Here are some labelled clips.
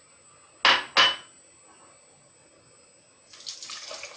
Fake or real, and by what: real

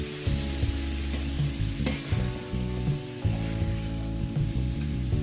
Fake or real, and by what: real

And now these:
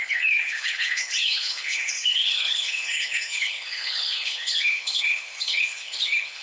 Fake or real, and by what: fake, codec, HILCodec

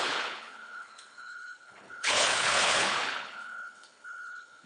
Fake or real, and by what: fake, codec, HILCodec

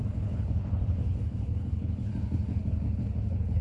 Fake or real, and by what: fake, codec, HILCodec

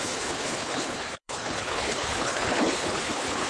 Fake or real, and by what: fake, codec, HILCodec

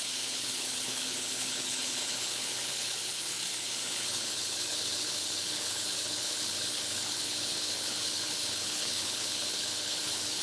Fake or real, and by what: fake, codec, HILCodec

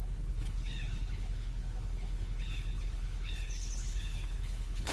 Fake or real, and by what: fake, codec, HILCodec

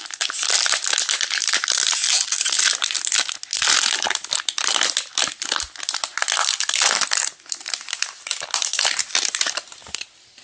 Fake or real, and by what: real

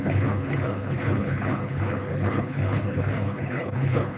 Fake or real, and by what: fake, codec, HILCodec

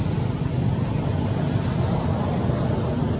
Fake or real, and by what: real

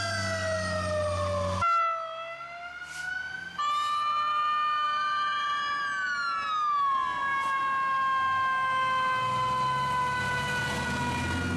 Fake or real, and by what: real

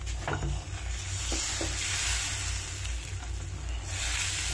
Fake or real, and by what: real